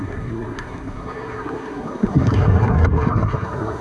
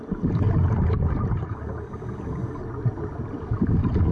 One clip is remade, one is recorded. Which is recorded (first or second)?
second